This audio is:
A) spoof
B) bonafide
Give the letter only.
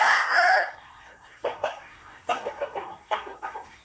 A